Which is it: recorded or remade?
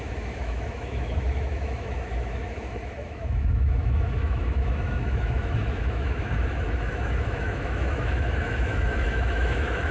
remade